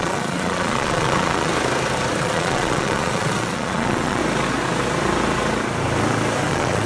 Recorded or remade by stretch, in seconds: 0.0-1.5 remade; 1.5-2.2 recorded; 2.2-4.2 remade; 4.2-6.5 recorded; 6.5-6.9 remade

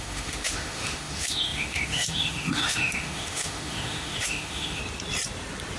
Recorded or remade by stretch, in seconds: 0.0-4.8 remade; 4.8-5.8 recorded

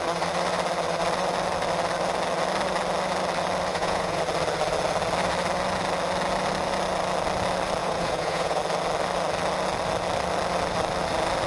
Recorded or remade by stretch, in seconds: 0.0-3.7 recorded; 3.7-4.2 remade; 4.2-7.8 recorded; 7.8-8.6 remade; 8.6-11.5 recorded

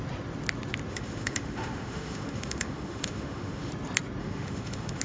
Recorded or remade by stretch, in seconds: 0.0-0.9 recorded; 0.9-3.7 remade; 3.7-4.2 recorded; 4.2-5.0 remade